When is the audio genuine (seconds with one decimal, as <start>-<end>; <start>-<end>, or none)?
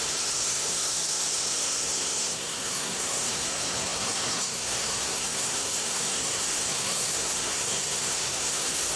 none